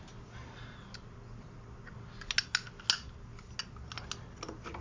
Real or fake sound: real